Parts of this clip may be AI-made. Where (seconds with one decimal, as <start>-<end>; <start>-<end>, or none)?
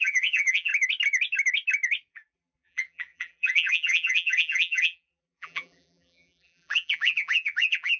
0.0-0.7; 2.1-8.0